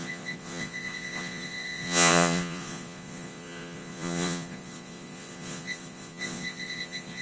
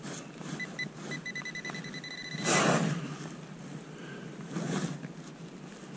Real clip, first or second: second